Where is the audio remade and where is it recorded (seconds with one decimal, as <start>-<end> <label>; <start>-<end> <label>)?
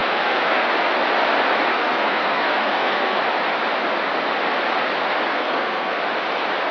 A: 0.0-0.7 remade; 0.7-1.7 recorded; 1.7-3.2 remade; 3.2-5.3 recorded; 5.3-6.0 remade; 6.0-6.7 recorded